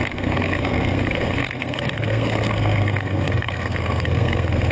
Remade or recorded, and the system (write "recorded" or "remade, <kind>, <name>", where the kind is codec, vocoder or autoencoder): remade, codec, SNAC